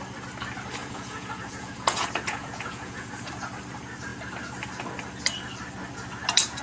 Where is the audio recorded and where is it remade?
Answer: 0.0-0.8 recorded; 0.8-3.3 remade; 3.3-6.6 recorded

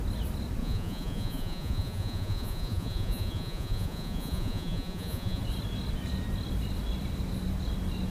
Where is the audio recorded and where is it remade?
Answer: 0.0-0.6 recorded; 0.6-5.4 remade; 5.4-8.1 recorded